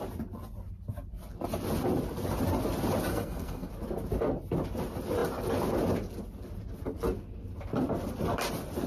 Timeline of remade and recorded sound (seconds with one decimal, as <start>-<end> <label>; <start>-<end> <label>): 0.0-3.1 recorded; 3.1-3.7 remade; 3.7-8.9 recorded